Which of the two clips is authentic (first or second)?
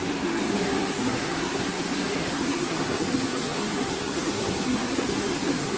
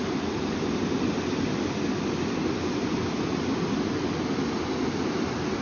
second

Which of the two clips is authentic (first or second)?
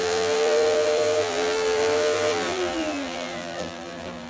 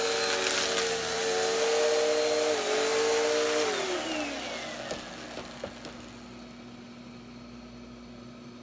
second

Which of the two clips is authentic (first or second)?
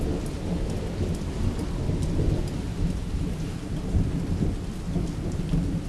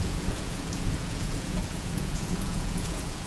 first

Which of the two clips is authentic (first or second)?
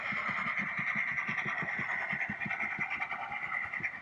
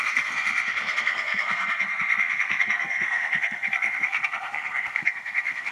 first